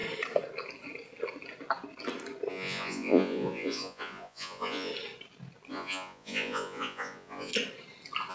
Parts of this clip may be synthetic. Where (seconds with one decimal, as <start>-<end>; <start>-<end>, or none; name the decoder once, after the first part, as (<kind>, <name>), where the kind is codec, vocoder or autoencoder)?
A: 2.5-4.9 (vocoder, Vocos); 5.7-7.5